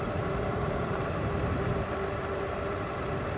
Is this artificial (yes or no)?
yes